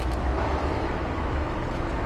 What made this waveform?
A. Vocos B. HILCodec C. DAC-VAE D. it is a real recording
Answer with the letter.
C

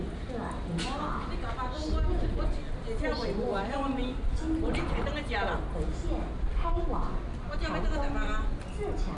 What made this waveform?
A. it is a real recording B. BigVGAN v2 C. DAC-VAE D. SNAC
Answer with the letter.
A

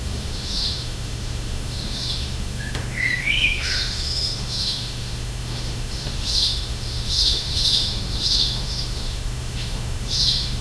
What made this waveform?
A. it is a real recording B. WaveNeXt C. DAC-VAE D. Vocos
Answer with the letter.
C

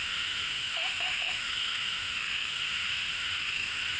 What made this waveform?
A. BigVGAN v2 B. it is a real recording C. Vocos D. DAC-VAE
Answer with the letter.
D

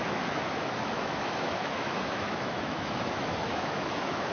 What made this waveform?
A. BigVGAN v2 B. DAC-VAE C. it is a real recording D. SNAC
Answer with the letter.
B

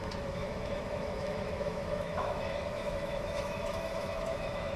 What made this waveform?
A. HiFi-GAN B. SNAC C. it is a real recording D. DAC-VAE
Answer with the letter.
D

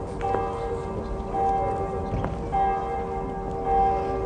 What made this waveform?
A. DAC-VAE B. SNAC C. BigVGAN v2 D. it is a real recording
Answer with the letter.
D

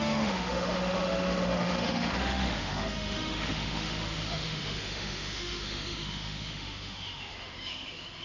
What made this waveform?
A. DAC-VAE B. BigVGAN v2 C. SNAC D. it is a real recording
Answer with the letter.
A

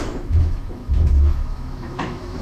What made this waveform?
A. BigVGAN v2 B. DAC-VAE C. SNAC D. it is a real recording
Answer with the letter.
B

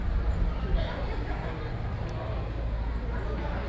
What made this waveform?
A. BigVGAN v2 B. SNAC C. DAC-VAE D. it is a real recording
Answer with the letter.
D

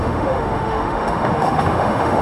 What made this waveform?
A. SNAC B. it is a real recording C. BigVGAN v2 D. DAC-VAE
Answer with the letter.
D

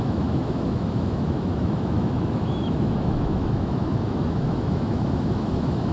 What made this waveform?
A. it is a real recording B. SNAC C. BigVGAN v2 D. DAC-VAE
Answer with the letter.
D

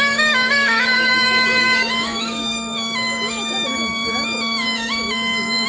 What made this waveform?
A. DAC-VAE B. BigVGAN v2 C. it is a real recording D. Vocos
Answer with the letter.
A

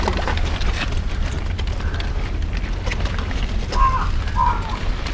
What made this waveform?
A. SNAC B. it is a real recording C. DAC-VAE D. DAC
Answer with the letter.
B